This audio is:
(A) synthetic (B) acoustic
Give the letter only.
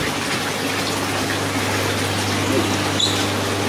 B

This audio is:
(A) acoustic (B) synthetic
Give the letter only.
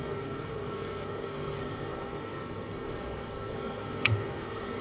B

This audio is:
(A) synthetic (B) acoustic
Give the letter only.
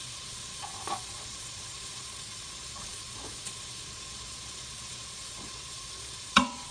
A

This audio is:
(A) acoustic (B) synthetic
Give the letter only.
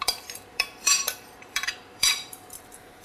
B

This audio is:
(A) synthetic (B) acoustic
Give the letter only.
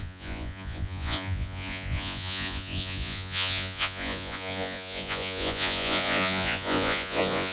A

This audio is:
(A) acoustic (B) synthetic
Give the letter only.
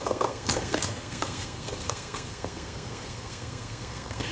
B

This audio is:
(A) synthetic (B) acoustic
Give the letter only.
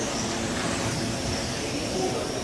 A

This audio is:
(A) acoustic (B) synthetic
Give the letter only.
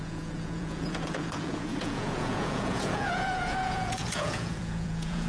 B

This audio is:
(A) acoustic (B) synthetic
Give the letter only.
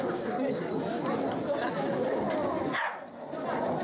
A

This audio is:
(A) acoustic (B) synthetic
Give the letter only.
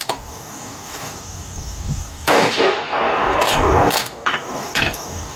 B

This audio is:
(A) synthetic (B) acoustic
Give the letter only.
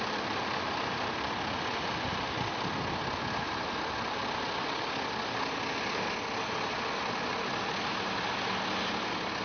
B